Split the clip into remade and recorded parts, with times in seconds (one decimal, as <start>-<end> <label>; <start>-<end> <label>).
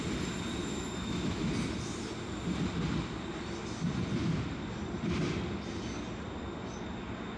0.0-0.6 recorded; 0.6-1.5 remade; 1.5-7.4 recorded